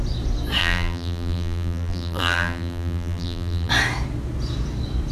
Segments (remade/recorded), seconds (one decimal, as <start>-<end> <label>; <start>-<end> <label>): 0.0-0.6 recorded; 0.6-3.7 remade; 3.7-5.1 recorded